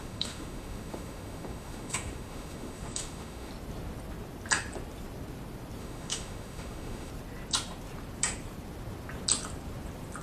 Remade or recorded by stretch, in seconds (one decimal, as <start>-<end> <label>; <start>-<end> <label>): 0.0-3.5 remade; 3.5-5.8 recorded; 5.8-7.1 remade; 7.1-10.2 recorded